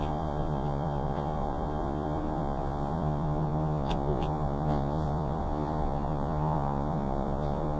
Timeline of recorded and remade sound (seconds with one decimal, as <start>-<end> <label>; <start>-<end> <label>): 0.0-7.8 remade